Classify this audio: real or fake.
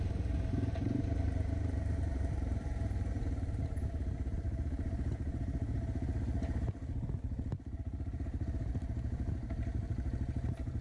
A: fake